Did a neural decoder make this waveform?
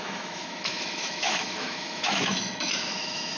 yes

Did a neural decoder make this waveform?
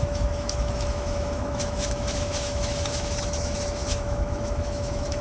yes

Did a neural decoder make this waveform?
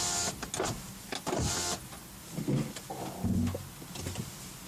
no